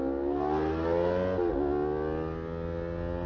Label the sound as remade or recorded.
recorded